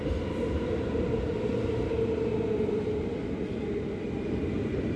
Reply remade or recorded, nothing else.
recorded